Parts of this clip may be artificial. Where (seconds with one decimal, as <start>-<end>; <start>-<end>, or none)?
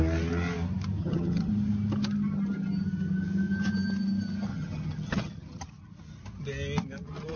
1.0-1.5; 4.5-5.7